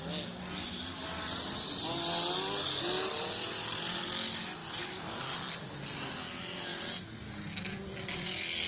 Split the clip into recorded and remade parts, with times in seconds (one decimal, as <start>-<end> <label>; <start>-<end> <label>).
0.0-4.6 recorded; 4.6-5.2 remade; 5.2-8.7 recorded